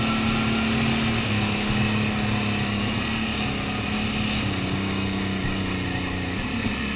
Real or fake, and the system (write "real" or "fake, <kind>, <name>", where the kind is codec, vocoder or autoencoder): real